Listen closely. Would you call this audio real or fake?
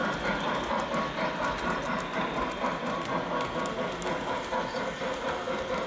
real